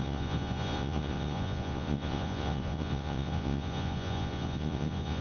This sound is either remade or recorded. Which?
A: remade